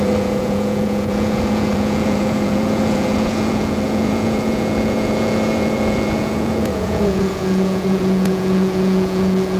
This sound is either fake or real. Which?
fake